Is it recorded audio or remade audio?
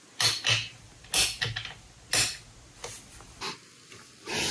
recorded